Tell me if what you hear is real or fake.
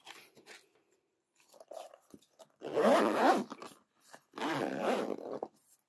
real